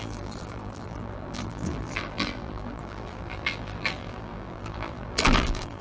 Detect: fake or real fake